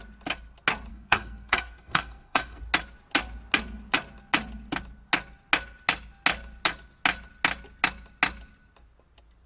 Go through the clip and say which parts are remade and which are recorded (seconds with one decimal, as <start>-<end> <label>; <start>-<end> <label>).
0.0-0.9 recorded; 0.9-2.6 remade; 2.6-9.5 recorded